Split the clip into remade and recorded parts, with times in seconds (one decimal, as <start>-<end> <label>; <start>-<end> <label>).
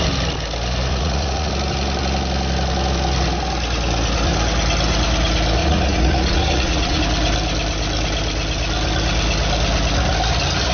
0.0-0.9 recorded; 0.9-1.5 remade; 1.5-5.6 recorded; 5.6-7.0 remade; 7.0-10.7 recorded